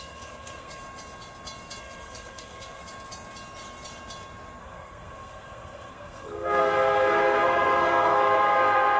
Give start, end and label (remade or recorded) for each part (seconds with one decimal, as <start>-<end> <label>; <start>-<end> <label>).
0.0-0.8 remade; 0.8-1.8 recorded; 1.8-2.8 remade; 2.8-4.6 recorded; 4.6-9.0 remade